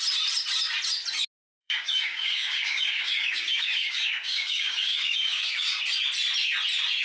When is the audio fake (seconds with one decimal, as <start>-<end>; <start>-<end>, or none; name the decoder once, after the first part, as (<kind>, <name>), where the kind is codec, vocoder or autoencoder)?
1.6-5.8 (codec, DAC)

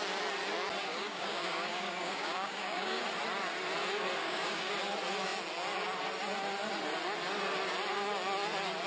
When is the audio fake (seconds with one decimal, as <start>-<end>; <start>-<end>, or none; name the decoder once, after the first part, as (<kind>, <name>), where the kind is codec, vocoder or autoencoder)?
0.9-3.0 (codec, DAC); 4.2-4.7

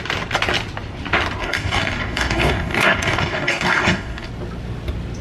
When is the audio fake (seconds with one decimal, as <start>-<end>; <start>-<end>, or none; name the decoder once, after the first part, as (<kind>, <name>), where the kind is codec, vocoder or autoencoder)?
1.4-4.3 (codec, DAC)

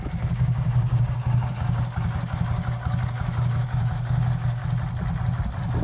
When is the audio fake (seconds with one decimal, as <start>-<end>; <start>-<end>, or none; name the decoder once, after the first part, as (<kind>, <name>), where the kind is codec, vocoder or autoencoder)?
0.0-4.6 (codec, DAC)

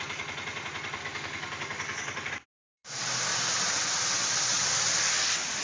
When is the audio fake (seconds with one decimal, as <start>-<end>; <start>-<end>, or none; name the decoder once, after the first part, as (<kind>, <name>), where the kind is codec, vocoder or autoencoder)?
1.0-2.3 (codec, DAC)

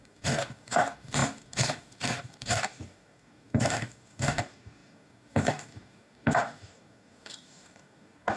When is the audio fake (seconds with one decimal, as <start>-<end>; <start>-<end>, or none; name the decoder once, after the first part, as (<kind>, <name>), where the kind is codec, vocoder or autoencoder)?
0.0-8.4 (codec, DAC)

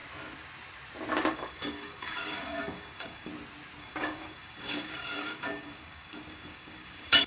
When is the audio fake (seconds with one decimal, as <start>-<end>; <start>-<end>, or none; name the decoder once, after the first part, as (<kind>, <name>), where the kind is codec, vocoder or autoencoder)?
1.3-3.3 (codec, DAC); 3.8-7.3